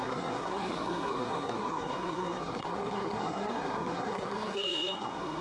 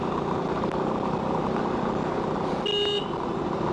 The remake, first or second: first